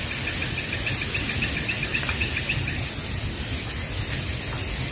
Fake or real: real